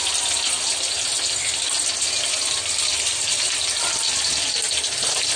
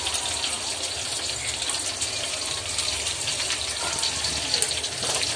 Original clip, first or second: first